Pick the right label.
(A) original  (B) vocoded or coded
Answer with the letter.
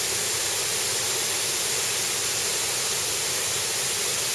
A